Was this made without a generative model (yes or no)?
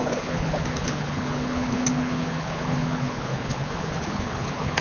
no